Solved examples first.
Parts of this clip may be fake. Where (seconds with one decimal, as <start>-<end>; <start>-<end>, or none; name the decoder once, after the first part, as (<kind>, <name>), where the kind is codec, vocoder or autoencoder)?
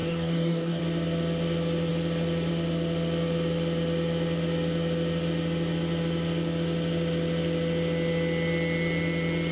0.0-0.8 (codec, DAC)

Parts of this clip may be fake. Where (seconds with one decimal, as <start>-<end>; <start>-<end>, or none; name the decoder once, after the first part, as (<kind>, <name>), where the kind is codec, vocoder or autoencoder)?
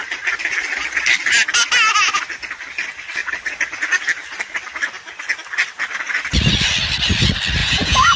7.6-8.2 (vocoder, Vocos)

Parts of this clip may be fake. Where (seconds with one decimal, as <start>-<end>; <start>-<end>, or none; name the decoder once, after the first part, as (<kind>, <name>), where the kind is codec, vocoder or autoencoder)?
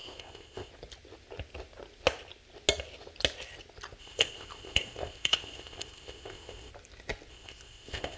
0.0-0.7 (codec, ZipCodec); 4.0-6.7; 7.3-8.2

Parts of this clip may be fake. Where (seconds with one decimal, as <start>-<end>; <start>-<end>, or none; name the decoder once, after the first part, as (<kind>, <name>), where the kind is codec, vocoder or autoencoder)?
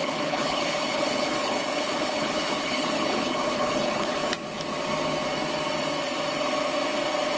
0.0-4.2 (codec, HILCodec)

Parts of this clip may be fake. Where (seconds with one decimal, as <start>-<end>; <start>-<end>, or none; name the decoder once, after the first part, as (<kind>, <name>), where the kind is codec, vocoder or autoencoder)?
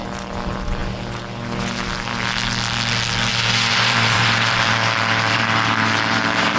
3.7-6.6 (vocoder, BigVGAN v2)